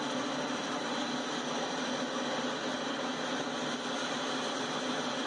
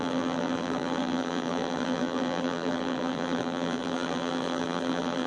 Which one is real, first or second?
first